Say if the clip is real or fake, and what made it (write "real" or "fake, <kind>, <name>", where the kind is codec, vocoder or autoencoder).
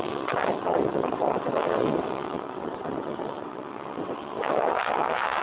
fake, vocoder, WaveNeXt